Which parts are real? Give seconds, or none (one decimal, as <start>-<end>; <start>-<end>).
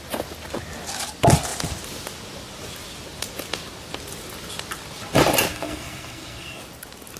0.0-5.5; 6.6-7.2